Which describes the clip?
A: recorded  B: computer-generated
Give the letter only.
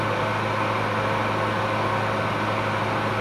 A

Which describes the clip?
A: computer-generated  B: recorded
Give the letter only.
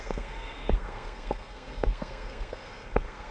A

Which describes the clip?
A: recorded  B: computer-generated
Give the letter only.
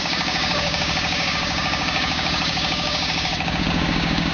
B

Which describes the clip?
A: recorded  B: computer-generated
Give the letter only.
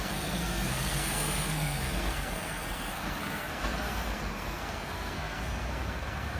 B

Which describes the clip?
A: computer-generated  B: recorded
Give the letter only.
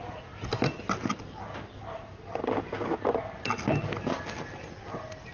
B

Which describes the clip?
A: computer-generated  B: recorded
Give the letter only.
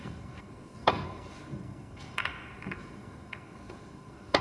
A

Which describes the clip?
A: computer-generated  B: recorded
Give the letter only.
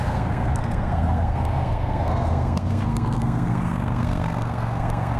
A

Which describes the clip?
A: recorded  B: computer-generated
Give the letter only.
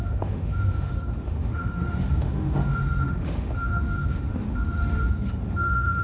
B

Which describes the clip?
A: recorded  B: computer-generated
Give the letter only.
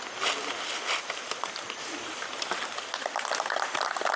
A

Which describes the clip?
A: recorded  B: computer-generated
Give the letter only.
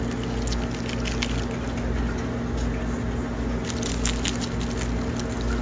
A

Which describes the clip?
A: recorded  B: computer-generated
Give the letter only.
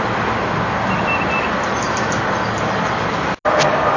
A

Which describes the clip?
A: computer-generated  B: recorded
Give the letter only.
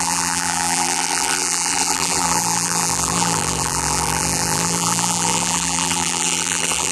A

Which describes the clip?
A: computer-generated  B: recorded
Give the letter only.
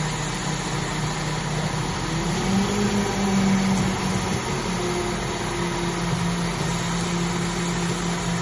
B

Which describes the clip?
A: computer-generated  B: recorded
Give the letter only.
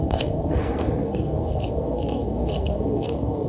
A